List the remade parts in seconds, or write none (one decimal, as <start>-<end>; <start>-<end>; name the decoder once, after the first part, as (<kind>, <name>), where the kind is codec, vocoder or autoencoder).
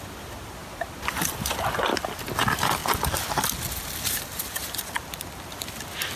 0.0-0.6 (vocoder, BigVGAN v2); 1.3-2.8; 4.1-6.2